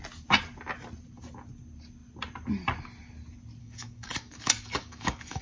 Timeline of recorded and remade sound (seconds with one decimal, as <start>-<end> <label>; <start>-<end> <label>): 0.0-3.6 recorded; 3.6-5.4 remade